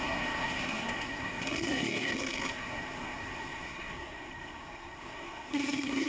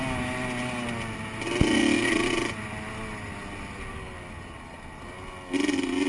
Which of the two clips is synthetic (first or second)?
first